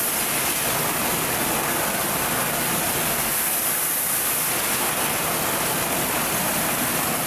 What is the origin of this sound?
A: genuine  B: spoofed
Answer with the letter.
A